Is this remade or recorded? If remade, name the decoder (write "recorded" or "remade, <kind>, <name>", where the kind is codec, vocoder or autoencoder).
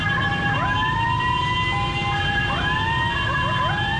recorded